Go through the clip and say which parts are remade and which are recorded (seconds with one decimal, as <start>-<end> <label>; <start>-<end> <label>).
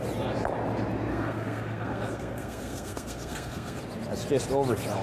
0.0-1.1 recorded; 1.1-3.8 remade; 3.8-5.0 recorded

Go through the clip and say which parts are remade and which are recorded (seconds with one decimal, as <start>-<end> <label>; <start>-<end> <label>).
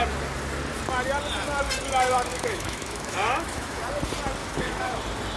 0.0-2.3 recorded; 2.3-3.8 remade; 3.8-4.4 recorded; 4.4-5.0 remade; 5.0-5.4 recorded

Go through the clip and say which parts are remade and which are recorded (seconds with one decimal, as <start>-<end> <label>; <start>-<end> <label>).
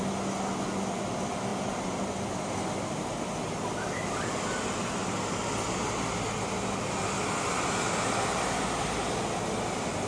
0.0-10.1 recorded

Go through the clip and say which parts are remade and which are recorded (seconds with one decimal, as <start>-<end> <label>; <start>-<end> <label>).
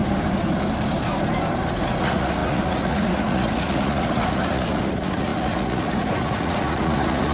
0.0-2.0 recorded; 2.0-7.3 remade